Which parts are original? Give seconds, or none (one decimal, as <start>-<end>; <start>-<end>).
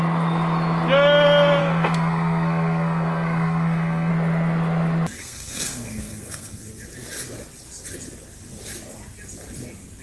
0.0-1.6; 4.1-5.2; 6.7-10.0